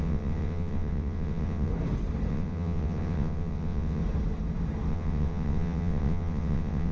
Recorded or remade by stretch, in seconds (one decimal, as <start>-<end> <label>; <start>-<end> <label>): 0.0-1.7 remade; 1.7-2.3 recorded; 2.3-4.0 remade; 4.0-4.9 recorded; 4.9-6.9 remade